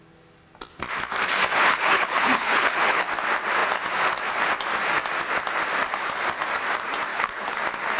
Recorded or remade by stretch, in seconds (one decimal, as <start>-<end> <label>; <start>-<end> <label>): 0.0-1.6 recorded; 1.6-3.0 remade; 3.0-7.1 recorded; 7.1-7.6 remade; 7.6-8.0 recorded